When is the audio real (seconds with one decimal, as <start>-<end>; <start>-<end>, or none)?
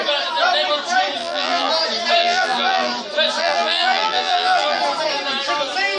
0.0-1.2; 1.7-2.2; 2.9-3.4; 4.8-6.0